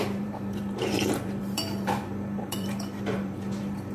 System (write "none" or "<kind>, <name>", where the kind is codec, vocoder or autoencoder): vocoder, BigVGAN v2